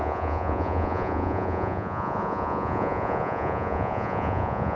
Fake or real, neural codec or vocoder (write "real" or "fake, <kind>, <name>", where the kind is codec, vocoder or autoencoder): fake, vocoder, Vocos